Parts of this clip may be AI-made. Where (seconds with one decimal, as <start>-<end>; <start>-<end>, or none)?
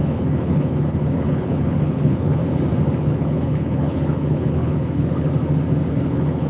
0.0-2.4; 3.0-5.3; 5.9-6.5